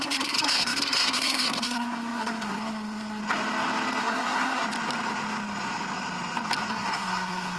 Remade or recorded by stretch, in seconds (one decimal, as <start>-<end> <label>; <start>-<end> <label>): 0.0-3.2 remade; 3.2-4.0 recorded; 4.0-4.6 remade; 4.6-6.7 recorded; 6.7-7.6 remade